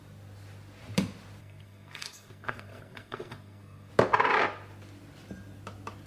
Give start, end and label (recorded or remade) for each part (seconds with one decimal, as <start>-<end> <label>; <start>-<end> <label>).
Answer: 0.0-1.4 recorded; 1.4-3.9 remade; 3.9-6.1 recorded